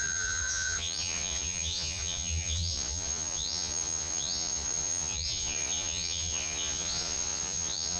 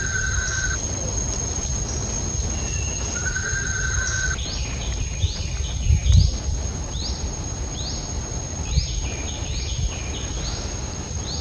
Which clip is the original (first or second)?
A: second